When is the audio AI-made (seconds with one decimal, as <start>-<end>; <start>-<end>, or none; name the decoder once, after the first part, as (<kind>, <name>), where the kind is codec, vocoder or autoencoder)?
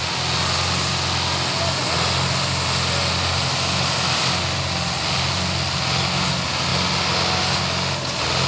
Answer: none